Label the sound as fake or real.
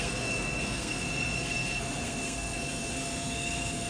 fake